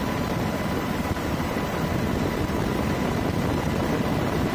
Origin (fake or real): fake